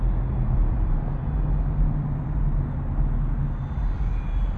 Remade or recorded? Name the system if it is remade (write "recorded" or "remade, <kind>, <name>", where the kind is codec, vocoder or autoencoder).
recorded